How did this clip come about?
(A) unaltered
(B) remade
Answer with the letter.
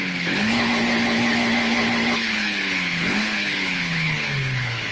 B